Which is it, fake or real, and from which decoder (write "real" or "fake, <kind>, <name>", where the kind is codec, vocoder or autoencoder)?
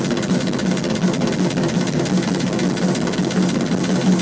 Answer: real